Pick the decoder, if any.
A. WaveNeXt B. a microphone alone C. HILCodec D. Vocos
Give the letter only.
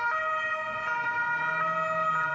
B